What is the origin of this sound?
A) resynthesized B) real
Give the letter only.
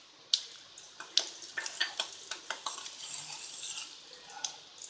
B